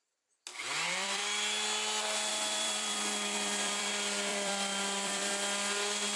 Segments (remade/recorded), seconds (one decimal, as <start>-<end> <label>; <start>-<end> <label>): 0.0-0.5 recorded; 0.5-1.2 remade; 1.2-2.3 recorded; 2.3-3.9 remade; 3.9-4.3 recorded; 4.3-5.3 remade; 5.3-6.2 recorded